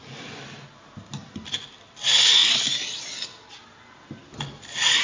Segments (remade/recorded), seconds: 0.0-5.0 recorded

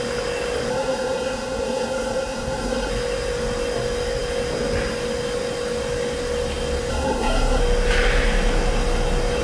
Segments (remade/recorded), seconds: 0.0-0.7 recorded; 0.7-2.9 remade; 2.9-6.9 recorded; 6.9-7.6 remade; 7.6-9.4 recorded

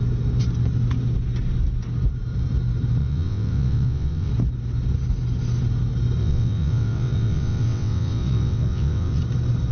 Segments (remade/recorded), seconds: 0.0-3.0 recorded; 3.0-4.3 remade; 4.3-6.2 recorded; 6.2-9.2 remade; 9.2-9.7 recorded

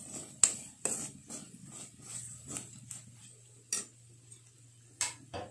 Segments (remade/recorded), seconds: 0.0-5.5 recorded

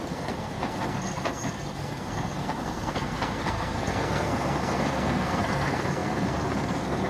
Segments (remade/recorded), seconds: 0.0-7.1 remade

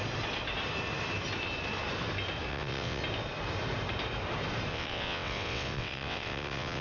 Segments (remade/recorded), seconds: 0.0-2.5 recorded; 2.5-3.0 remade; 3.0-4.7 recorded; 4.7-6.8 remade

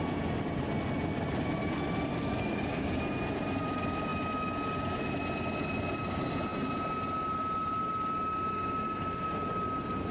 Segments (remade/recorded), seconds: 0.0-2.1 recorded; 2.1-3.0 remade; 3.0-10.1 recorded